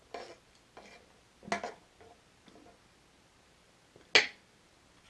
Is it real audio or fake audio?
real